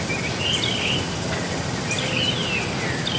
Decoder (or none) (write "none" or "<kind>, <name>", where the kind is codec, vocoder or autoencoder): none